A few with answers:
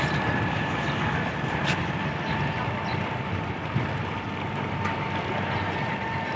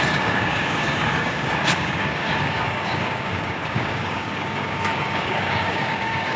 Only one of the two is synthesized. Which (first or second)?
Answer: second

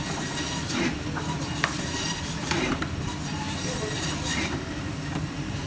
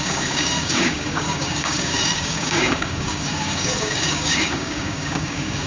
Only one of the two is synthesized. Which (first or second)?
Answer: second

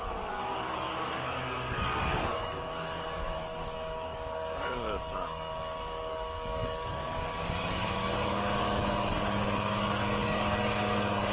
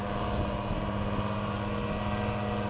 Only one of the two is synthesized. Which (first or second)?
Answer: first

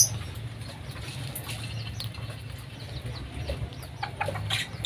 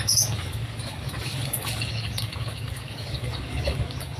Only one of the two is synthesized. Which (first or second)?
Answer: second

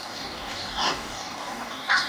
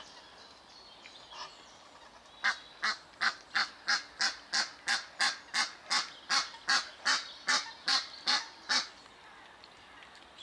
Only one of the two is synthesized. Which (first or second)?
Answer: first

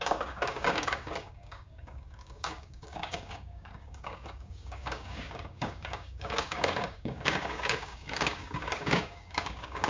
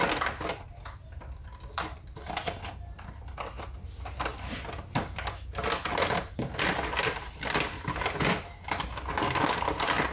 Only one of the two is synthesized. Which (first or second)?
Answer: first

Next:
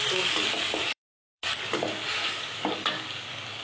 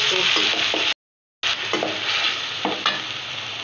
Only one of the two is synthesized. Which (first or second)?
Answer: first